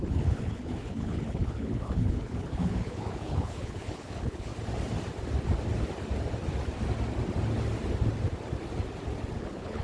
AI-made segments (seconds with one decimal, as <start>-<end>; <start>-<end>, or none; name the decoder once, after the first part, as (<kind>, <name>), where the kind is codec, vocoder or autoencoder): 0.0-4.5 (codec, HILCodec); 9.4-9.8